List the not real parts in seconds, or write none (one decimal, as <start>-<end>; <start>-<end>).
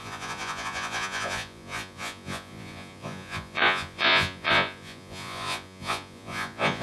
0.0-6.8